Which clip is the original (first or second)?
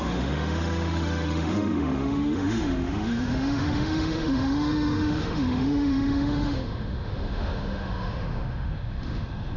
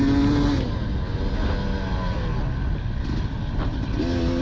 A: second